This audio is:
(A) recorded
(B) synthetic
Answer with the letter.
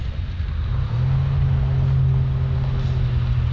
A